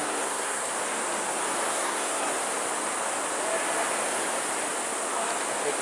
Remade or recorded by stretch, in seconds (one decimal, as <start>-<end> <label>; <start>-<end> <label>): 0.0-0.7 remade; 0.7-1.7 recorded; 1.7-2.3 remade; 2.3-5.8 recorded